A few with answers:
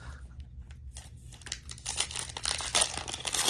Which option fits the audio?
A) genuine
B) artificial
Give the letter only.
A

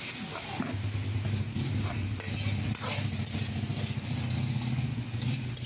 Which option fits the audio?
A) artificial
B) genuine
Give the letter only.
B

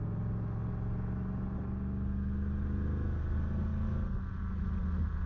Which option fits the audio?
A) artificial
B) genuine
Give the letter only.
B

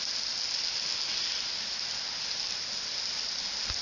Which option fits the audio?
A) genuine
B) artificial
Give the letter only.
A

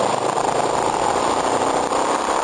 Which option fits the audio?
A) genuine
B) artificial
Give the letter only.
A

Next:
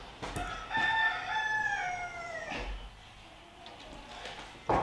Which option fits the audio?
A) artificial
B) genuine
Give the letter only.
B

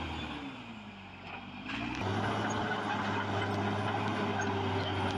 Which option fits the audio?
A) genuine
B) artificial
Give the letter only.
A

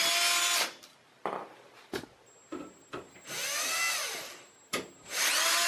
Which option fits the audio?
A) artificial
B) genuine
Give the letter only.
B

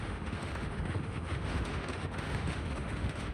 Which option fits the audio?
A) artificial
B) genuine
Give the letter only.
A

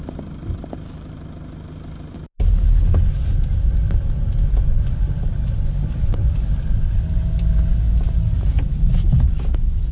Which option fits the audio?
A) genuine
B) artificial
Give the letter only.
A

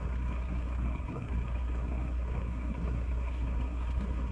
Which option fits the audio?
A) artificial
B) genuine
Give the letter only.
A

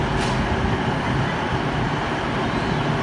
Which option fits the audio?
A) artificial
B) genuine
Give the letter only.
B